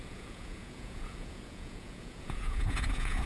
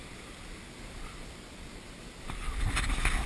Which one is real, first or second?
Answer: second